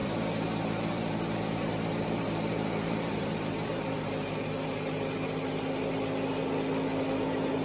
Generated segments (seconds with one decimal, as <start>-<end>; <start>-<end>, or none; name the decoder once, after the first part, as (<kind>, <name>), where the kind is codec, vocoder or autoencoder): 0.0-4.0 (vocoder, BigVGAN v2)